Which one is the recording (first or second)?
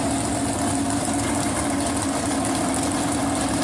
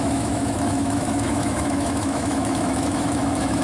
first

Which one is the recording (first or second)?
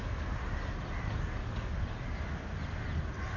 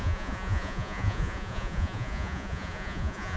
first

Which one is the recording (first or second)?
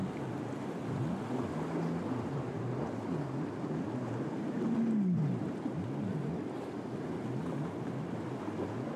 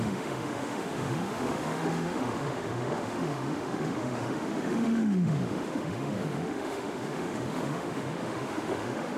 first